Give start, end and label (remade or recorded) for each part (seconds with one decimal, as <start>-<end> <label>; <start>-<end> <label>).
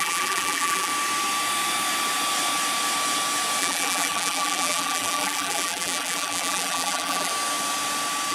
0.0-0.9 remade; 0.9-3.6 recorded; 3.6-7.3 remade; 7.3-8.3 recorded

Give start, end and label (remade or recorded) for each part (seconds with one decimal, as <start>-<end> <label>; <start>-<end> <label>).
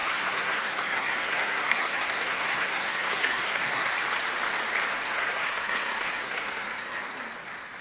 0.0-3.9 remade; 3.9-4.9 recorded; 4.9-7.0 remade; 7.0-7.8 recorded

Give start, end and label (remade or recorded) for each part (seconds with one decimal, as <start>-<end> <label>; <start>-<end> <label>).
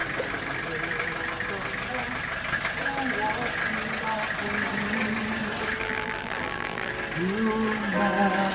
0.0-5.8 recorded; 5.8-6.9 remade; 6.9-8.5 recorded